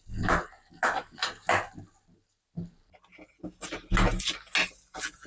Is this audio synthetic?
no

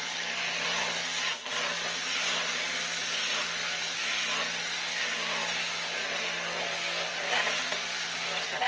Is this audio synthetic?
no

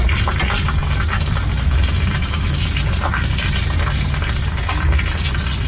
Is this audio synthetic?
no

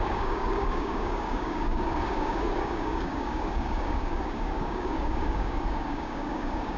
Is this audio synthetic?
yes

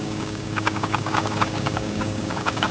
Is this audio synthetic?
yes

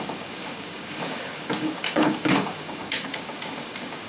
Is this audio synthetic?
yes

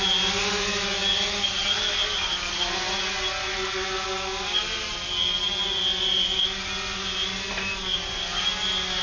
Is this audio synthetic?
no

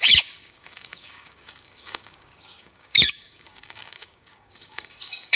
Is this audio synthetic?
yes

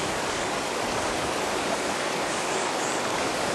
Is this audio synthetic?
yes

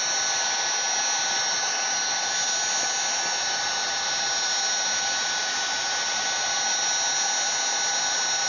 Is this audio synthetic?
no